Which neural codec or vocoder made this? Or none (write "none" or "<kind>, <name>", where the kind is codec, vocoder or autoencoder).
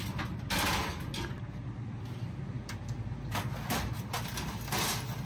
none